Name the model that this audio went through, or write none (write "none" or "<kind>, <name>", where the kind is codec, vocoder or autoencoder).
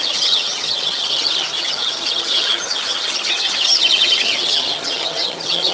vocoder, HiFi-GAN